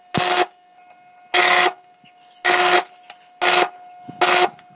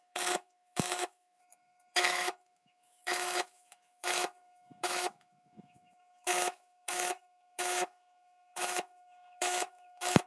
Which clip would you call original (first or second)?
first